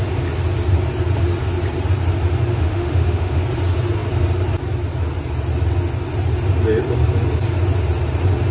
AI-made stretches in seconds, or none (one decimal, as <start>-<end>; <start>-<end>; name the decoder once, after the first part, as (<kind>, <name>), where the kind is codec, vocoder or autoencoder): 2.5-3.4 (autoencoder, DAC-VAE)